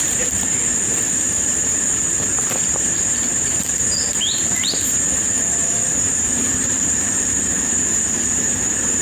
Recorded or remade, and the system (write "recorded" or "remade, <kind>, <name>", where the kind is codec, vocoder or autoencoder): remade, vocoder, BigVGAN v2